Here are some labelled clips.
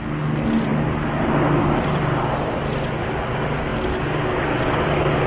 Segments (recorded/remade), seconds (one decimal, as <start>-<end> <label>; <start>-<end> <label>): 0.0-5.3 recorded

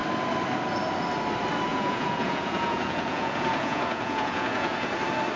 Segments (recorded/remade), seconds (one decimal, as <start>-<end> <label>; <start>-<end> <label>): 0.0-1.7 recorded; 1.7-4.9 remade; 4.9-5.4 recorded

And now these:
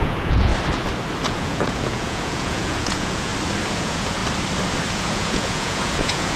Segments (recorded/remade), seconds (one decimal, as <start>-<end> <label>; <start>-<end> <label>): 0.0-0.5 remade; 0.5-1.3 recorded; 1.3-3.3 remade; 3.3-3.8 recorded; 3.8-4.2 remade; 4.2-4.9 recorded; 4.9-6.4 remade